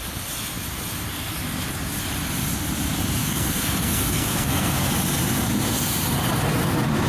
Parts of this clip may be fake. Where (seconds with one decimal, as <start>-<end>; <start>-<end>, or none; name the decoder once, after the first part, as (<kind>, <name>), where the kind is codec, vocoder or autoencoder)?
3.2-4.9 (codec, SNAC)